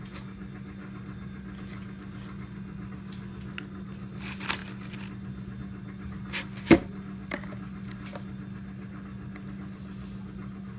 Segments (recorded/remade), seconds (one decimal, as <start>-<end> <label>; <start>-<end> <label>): 0.0-10.8 recorded